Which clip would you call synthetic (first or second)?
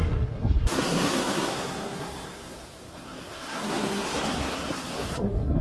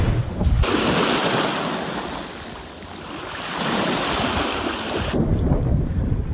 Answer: first